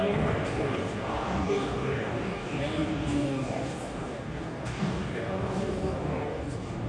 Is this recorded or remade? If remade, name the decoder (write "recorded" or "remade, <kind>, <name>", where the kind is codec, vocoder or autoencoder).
remade, codec, DAC